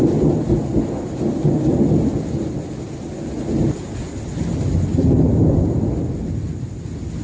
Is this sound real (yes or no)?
yes